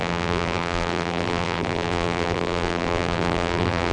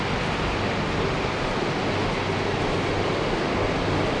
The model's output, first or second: first